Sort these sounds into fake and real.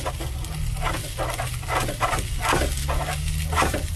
real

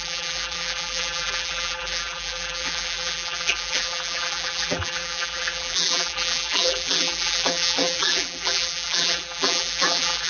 fake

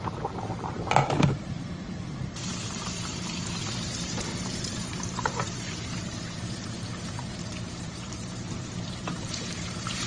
fake